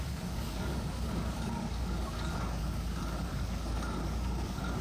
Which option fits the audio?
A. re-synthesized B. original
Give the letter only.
A